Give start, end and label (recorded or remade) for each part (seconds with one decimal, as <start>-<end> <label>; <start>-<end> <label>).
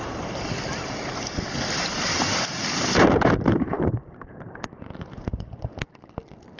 0.0-2.3 recorded; 2.3-5.9 remade; 5.9-6.6 recorded